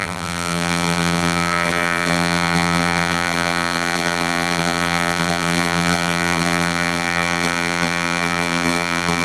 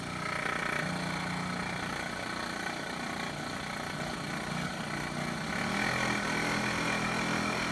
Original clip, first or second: second